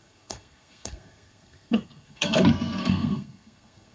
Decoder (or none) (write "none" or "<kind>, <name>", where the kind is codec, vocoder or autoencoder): codec, SNAC